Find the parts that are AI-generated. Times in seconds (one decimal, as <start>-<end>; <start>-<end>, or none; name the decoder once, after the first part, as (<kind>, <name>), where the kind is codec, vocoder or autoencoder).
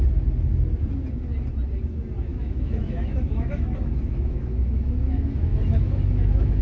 2.3-6.6 (autoencoder, DAC-VAE)